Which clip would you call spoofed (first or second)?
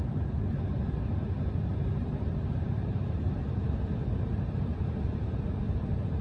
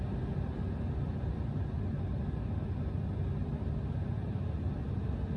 first